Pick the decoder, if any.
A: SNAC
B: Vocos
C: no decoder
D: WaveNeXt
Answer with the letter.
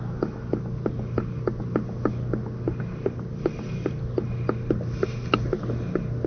C